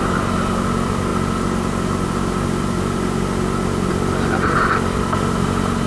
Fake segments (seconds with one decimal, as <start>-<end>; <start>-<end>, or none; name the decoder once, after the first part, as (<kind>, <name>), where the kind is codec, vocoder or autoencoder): none